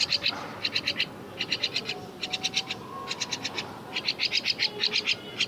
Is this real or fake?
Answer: real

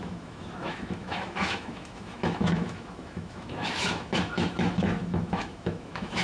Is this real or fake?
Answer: fake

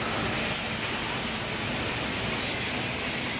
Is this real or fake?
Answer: real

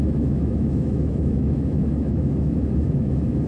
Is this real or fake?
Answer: fake